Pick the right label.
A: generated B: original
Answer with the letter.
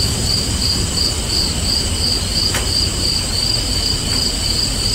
B